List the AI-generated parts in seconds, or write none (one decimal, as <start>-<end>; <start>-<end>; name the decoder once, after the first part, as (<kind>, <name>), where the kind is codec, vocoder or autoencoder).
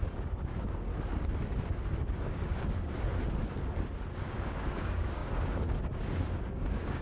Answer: 0.0-0.9 (codec, DAC); 1.7-3.1; 4.2-7.0